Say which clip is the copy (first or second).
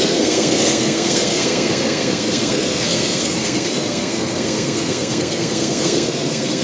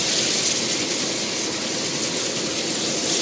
first